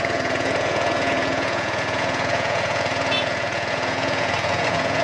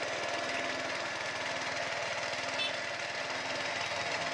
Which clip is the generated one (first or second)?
first